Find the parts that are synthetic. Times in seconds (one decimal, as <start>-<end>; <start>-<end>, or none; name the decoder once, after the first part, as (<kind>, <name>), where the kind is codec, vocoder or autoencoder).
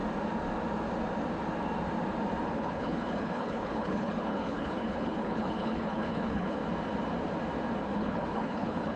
2.5-6.6 (codec, HILCodec); 7.8-9.0